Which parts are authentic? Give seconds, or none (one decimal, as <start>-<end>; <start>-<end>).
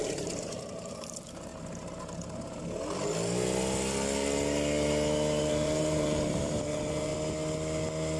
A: 1.5-5.4; 7.1-8.2